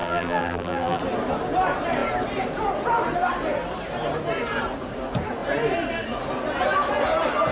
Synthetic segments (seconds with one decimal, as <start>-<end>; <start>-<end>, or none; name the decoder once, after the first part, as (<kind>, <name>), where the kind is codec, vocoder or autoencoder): 0.0-1.0 (vocoder, BigVGAN v2)